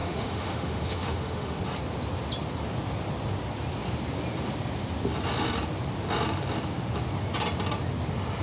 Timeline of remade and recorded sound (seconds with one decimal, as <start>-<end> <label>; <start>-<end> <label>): 0.0-1.6 remade; 1.6-8.4 recorded